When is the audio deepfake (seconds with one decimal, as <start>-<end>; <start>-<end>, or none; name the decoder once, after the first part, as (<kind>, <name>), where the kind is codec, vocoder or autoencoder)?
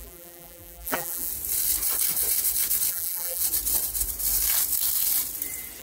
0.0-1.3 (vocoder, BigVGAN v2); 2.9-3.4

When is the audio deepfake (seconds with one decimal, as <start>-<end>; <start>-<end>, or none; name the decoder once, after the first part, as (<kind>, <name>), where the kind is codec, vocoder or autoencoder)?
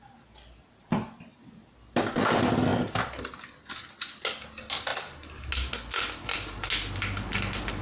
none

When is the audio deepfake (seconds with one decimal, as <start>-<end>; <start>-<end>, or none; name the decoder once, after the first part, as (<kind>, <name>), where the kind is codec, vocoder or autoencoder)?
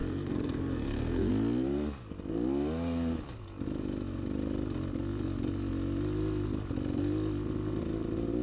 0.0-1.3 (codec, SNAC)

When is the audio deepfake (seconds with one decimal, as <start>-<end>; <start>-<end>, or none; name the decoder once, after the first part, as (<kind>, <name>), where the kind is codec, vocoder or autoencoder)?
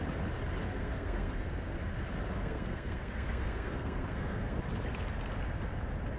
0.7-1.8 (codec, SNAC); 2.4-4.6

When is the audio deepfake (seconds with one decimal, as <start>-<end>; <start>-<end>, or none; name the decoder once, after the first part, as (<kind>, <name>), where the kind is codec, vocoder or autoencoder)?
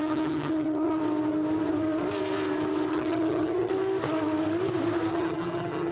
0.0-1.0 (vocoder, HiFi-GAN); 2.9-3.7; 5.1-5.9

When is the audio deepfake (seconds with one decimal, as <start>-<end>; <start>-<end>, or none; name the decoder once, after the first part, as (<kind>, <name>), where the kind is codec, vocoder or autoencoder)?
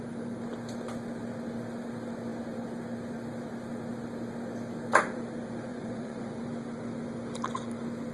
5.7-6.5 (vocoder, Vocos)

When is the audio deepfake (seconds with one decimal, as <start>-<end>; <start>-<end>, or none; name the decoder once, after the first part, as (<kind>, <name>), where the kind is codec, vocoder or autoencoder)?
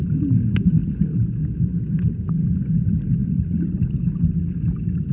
none